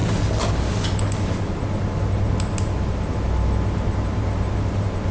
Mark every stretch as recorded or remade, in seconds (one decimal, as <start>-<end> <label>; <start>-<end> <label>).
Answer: 0.0-5.1 recorded